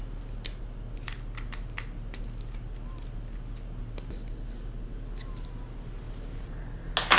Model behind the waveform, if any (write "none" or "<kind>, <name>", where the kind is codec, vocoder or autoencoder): none